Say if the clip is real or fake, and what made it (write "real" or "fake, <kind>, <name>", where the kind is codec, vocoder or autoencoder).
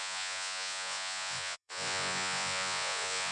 fake, vocoder, Vocos